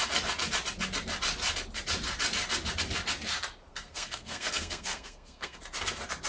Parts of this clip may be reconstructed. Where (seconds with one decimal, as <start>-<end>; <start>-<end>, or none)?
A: 3.7-5.6